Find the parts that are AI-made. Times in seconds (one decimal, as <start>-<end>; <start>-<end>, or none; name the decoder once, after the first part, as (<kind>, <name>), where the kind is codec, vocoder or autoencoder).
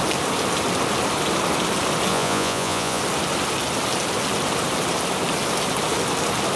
2.1-3.0 (vocoder, Vocos)